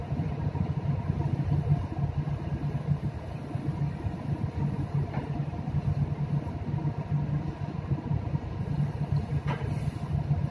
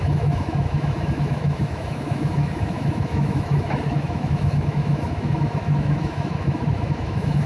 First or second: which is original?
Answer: first